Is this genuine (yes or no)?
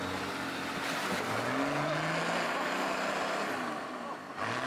yes